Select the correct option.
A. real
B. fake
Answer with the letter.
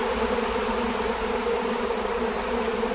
A